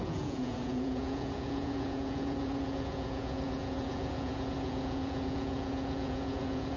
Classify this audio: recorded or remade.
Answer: remade